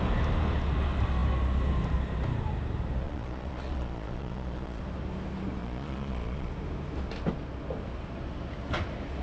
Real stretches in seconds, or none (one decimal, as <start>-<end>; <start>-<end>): 0.0-3.0; 4.8-5.6; 6.5-9.2